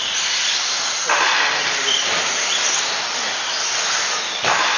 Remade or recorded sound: recorded